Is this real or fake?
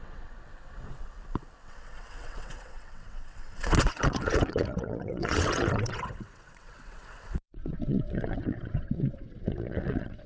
fake